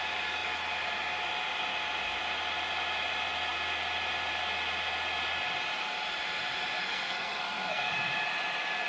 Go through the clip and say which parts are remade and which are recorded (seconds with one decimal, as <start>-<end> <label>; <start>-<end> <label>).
0.0-6.8 recorded; 6.8-7.9 remade; 7.9-8.9 recorded